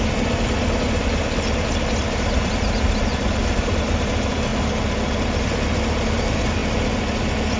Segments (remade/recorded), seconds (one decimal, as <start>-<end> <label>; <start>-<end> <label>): 0.0-4.5 remade; 4.5-5.5 recorded; 5.5-6.6 remade; 6.6-7.6 recorded